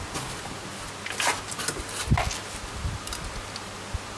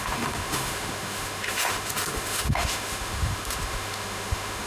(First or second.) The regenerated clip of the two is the second